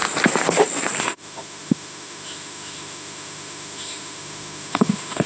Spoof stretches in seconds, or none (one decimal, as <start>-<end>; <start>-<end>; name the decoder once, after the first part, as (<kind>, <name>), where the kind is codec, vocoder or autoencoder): 1.0-5.3 (autoencoder, DAC-VAE)